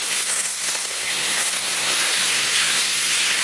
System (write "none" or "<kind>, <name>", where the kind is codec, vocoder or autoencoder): codec, SNAC